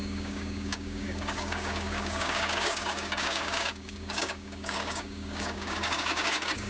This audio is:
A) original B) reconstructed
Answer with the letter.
B